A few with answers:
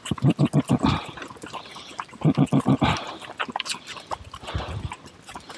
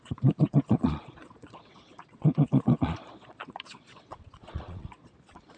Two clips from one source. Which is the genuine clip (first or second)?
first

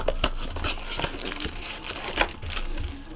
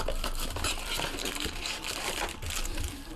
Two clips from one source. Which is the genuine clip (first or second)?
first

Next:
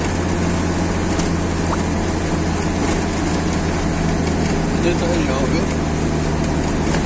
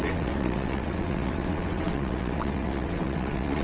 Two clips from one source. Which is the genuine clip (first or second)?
first